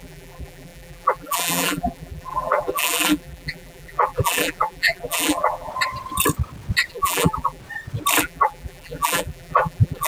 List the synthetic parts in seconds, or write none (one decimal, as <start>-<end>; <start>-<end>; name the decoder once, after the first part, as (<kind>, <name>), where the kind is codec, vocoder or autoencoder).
0.0-5.7 (vocoder, BigVGAN v2); 6.9-7.6; 8.2-10.1